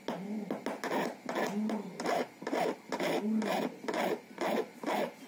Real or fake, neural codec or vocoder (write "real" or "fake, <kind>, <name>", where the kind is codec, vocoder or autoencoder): real